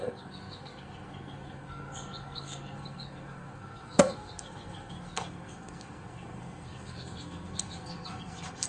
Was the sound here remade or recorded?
remade